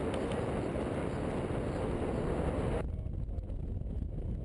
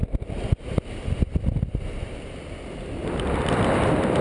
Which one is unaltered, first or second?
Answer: first